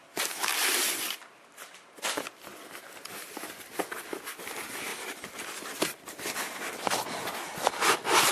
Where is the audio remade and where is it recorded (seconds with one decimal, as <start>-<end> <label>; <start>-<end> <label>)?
0.0-8.3 recorded